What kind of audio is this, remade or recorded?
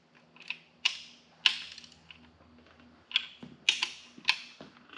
recorded